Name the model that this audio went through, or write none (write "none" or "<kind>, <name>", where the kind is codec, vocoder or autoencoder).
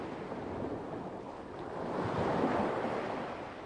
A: none